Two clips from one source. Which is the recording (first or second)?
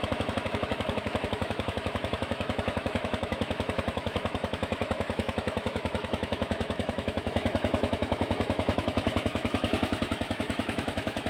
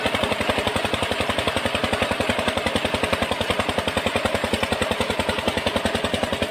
second